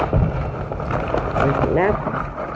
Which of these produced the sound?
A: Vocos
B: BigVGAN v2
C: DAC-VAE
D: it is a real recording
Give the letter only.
D